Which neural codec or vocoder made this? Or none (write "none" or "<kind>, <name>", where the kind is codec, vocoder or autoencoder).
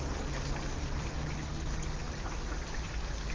none